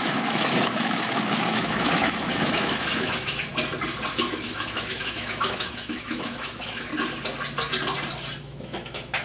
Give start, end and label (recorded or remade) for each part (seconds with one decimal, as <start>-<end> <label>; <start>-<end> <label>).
0.0-3.5 remade; 3.5-4.1 recorded; 4.1-6.9 remade; 6.9-8.4 recorded; 8.4-9.2 remade